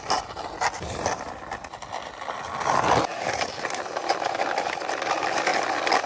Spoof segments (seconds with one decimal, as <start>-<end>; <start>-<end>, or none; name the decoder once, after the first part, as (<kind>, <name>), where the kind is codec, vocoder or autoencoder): 3.1-4.5 (vocoder, BigVGAN v2)